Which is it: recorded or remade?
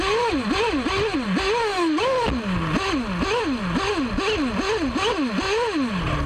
recorded